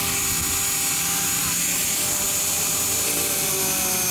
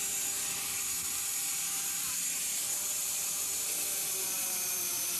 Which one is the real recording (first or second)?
first